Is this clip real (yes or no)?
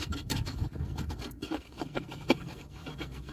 no